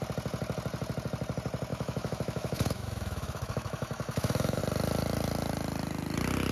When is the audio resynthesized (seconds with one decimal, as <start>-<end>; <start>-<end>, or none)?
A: 1.7-4.6